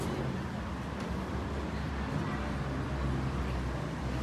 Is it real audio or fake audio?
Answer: real